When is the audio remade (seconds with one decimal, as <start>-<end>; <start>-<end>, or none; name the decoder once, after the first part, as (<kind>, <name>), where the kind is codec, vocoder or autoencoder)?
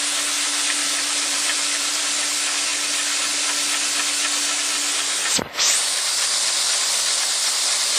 0.8-2.0 (vocoder, BigVGAN v2)